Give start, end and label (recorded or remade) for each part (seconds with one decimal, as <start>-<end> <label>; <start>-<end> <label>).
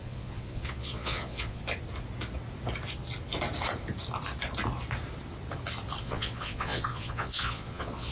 0.0-1.6 remade; 1.6-6.0 recorded; 6.0-8.1 remade